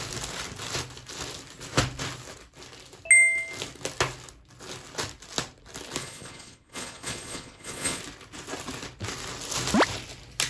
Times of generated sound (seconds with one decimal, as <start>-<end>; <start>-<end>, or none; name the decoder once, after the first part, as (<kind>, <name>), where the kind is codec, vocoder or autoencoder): 6.0-8.0 (vocoder, Vocos)

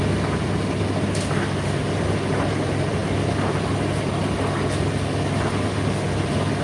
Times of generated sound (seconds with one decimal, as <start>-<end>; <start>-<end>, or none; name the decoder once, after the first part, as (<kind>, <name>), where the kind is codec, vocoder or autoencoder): none

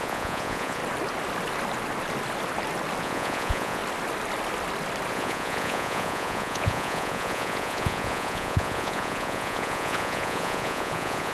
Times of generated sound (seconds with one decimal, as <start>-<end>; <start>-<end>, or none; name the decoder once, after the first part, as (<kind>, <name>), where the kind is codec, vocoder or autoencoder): 0.0-0.8 (vocoder, Vocos); 3.0-3.8; 5.1-11.3

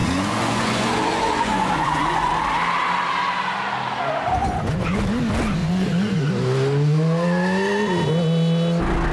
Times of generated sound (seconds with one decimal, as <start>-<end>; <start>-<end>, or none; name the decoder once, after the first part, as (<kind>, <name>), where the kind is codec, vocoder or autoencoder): 0.0-2.3 (vocoder, Vocos); 4.4-5.0; 5.6-6.3

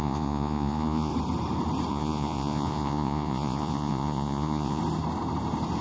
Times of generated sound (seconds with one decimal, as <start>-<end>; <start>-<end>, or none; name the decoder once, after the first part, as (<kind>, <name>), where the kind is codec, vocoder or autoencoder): 0.0-1.1 (vocoder, Vocos); 1.9-4.8